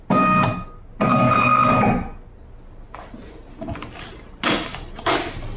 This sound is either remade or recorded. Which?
recorded